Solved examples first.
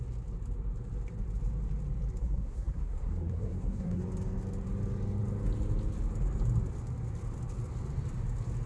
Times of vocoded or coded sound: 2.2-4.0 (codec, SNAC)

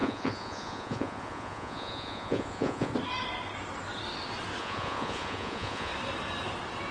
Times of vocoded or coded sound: 0.0-2.9 (vocoder, Vocos); 4.6-5.9

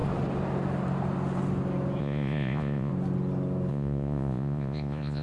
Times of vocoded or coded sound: 2.0-2.9 (vocoder, Vocos); 3.7-5.2